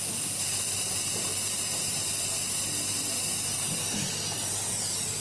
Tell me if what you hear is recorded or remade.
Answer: recorded